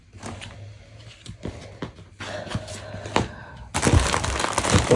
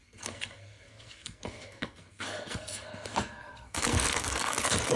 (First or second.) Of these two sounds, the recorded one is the first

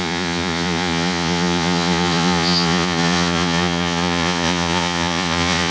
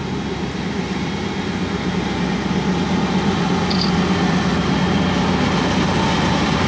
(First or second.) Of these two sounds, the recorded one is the second